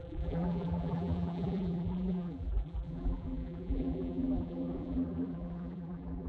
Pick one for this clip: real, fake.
fake